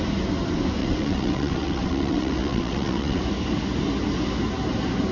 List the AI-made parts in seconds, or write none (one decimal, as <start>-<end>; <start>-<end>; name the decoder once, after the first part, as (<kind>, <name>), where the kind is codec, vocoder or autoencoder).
0.8-3.2 (vocoder, WaveNeXt)